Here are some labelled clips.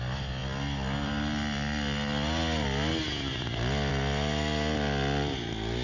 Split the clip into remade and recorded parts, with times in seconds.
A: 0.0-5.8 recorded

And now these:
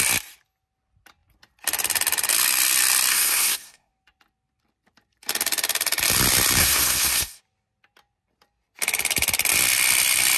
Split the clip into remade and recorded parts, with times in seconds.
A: 0.0-3.1 recorded; 3.1-3.9 remade; 3.9-6.6 recorded; 6.6-7.4 remade; 7.4-10.4 recorded

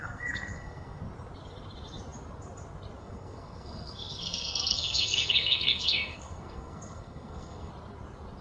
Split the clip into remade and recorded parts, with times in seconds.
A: 0.0-1.0 remade; 1.0-3.0 recorded; 3.0-7.7 remade; 7.7-8.4 recorded

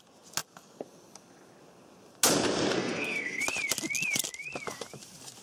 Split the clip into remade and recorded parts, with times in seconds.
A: 0.0-2.8 recorded; 2.8-3.4 remade; 3.4-5.4 recorded

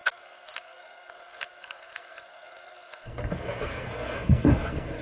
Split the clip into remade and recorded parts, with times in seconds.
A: 0.0-5.0 remade